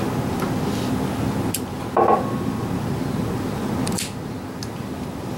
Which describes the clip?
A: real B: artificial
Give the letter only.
A